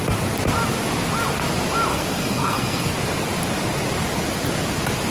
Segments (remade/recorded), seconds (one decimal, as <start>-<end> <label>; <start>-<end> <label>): 0.0-1.9 recorded; 1.9-2.9 remade; 2.9-5.1 recorded